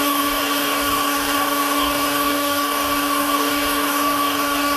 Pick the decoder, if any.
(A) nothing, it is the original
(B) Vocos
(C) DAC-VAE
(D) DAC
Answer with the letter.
D